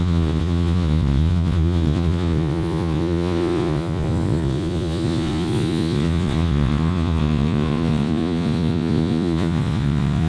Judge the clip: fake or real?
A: fake